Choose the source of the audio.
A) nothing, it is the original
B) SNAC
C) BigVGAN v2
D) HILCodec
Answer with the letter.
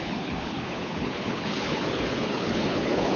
D